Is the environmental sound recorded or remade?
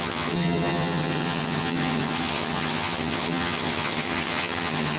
remade